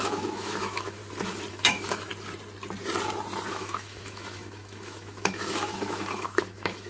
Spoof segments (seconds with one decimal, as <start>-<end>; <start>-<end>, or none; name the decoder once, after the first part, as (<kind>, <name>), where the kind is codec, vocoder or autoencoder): 0.0-1.0 (autoencoder, DAC-VAE); 1.5-2.1; 3.5-6.9